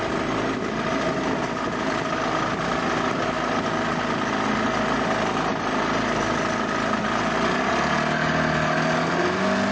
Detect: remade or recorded recorded